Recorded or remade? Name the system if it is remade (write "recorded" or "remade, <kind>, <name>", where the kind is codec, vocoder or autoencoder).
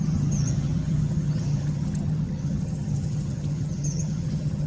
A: remade, vocoder, HiFi-GAN